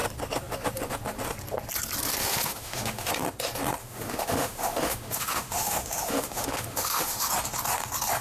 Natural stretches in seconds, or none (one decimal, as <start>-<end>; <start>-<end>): 0.0-2.2; 3.1-3.8; 7.3-8.2